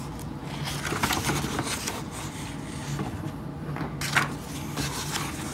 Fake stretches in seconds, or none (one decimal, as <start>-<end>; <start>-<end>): none